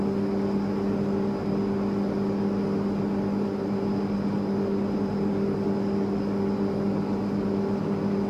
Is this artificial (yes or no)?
no